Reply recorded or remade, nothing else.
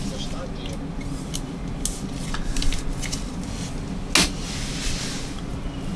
recorded